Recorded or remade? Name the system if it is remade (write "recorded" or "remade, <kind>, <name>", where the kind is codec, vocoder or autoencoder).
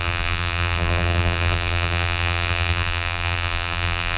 remade, vocoder, BigVGAN v2